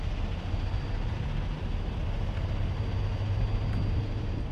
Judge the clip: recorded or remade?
recorded